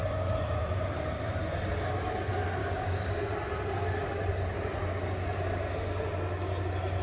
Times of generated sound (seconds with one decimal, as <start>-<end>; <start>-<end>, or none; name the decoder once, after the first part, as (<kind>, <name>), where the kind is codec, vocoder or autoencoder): 2.6-3.2 (codec, DAC)

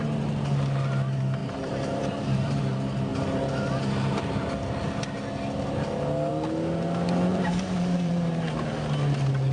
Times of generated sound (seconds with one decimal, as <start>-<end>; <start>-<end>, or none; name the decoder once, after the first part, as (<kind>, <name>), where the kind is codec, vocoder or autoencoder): 1.4-2.6 (vocoder, BigVGAN v2); 7.3-8.5

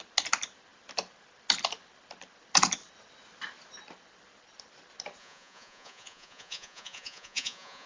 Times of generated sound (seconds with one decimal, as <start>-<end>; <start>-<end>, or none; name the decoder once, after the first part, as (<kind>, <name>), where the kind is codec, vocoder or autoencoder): 5.2-7.9 (vocoder, Vocos)

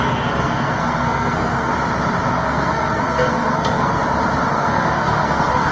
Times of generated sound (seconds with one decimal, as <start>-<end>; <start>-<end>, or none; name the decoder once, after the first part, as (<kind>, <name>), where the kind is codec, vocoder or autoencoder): 0.0-1.7 (codec, SNAC); 2.3-4.0; 4.5-5.7

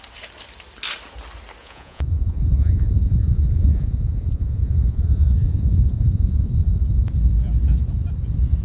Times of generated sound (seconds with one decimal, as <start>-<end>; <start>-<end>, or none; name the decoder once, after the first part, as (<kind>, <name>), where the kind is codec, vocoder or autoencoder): 1.6-6.5 (vocoder, Vocos)

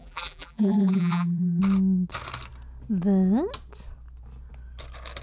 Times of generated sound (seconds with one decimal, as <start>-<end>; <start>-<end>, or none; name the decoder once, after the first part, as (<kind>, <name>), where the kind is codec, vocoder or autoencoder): 0.0-1.6 (vocoder, BigVGAN v2)